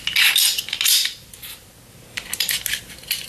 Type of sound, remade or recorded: recorded